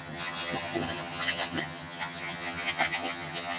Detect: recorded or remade remade